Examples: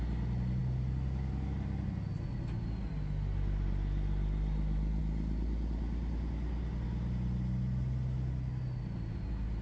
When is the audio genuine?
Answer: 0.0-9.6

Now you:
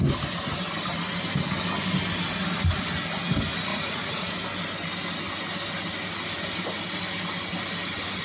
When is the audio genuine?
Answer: 0.0-3.7; 4.3-8.2